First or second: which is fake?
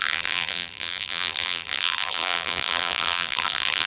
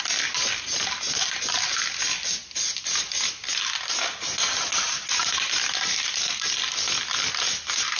first